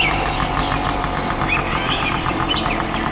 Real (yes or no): no